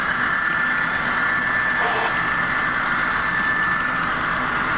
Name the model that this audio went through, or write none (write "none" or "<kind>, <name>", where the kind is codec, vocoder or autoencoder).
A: none